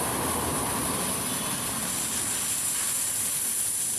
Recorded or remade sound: recorded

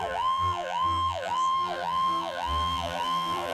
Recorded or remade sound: remade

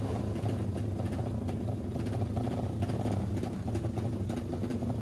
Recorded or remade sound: recorded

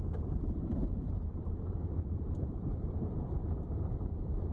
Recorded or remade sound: remade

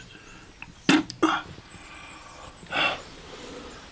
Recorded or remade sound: recorded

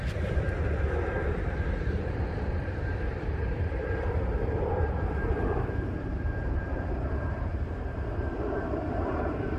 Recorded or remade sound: remade